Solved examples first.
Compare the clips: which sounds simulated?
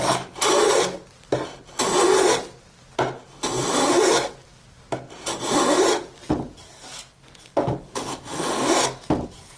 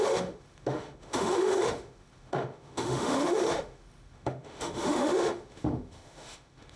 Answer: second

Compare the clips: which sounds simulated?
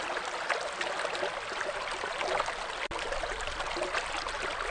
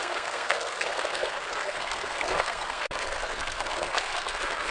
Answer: second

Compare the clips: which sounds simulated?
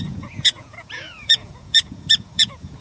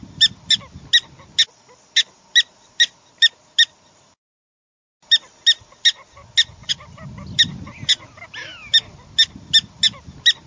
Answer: first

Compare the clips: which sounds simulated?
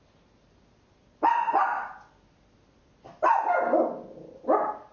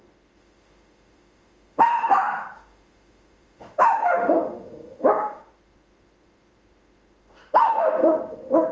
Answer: second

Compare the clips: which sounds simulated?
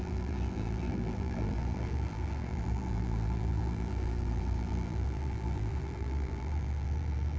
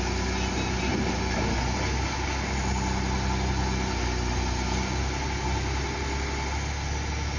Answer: first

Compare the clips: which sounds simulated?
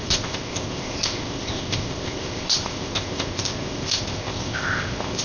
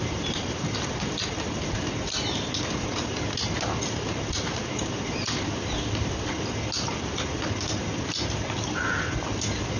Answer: first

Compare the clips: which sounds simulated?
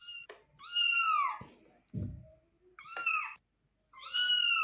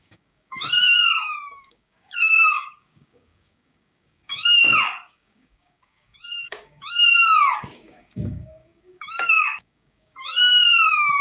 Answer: second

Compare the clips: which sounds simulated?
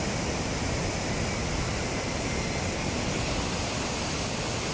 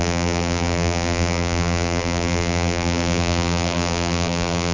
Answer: second